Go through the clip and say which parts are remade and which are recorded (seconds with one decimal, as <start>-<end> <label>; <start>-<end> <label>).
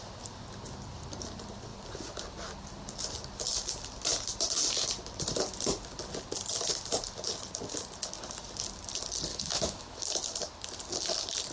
0.0-9.3 recorded; 9.3-10.0 remade; 10.0-11.5 recorded